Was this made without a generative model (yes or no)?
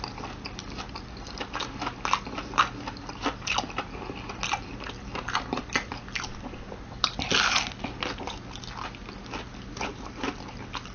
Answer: yes